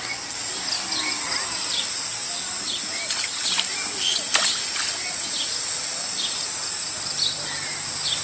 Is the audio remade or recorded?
recorded